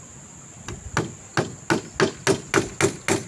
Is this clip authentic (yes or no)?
yes